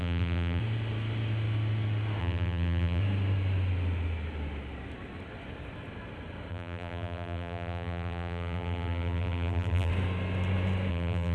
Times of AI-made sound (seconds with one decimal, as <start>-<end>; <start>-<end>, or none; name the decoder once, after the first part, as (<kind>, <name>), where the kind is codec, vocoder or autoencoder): 0.0-0.6 (vocoder, BigVGAN v2); 2.2-3.0; 6.5-9.9; 10.9-11.3